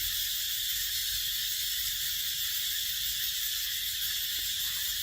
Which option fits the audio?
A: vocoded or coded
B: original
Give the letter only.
A